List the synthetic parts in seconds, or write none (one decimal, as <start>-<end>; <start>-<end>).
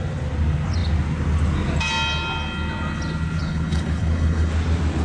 3.4-4.5